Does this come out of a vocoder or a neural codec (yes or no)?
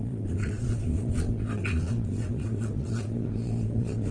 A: yes